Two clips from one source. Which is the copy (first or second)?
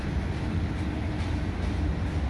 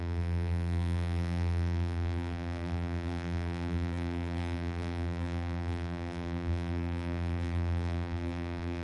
second